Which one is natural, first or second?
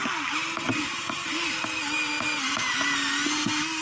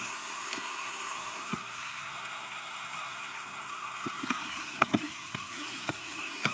first